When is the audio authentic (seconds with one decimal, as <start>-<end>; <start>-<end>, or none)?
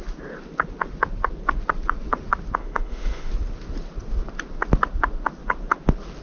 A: 0.0-2.6; 3.3-6.2